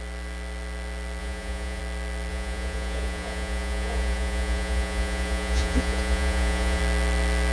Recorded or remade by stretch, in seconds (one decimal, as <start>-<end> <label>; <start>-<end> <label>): 0.0-1.2 recorded; 1.2-1.8 remade; 1.8-2.3 recorded; 2.3-6.8 remade; 6.8-7.5 recorded